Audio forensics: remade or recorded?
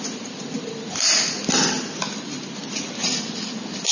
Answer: recorded